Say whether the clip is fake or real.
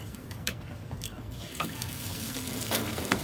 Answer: fake